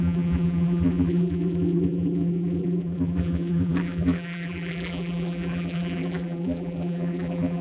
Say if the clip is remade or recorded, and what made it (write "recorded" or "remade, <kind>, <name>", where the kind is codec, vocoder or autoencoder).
remade, vocoder, BigVGAN v2